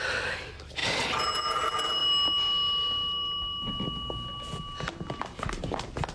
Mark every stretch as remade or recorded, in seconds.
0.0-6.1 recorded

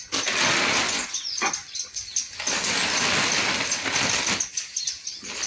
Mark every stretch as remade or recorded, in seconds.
0.0-0.8 recorded; 0.8-1.5 remade; 1.5-5.5 recorded

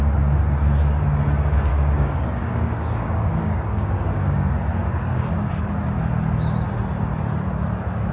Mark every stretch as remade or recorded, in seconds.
0.0-1.7 recorded; 1.7-4.5 remade; 4.5-4.9 recorded; 4.9-5.5 remade; 5.5-8.1 recorded

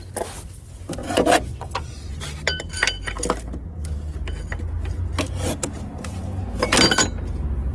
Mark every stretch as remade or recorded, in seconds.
0.0-1.0 recorded; 1.0-2.2 remade; 2.2-7.7 recorded